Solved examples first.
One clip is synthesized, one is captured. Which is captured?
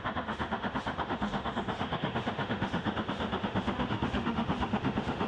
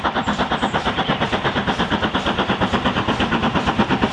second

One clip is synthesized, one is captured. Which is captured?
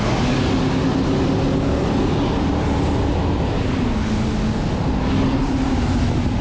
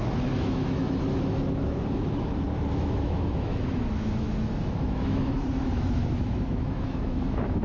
first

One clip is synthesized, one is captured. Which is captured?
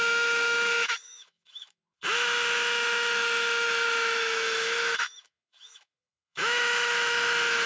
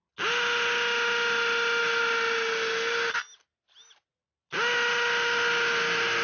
second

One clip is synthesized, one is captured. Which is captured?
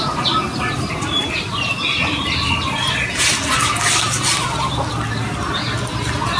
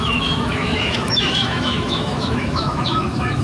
first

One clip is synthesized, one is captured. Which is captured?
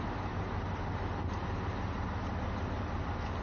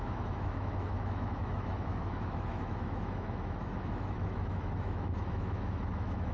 first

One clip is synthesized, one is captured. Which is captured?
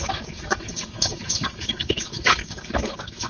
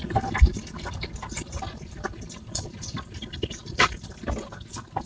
second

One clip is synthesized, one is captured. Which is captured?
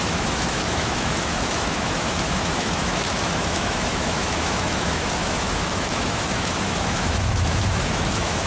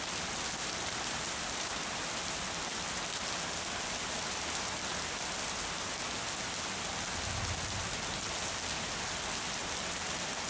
second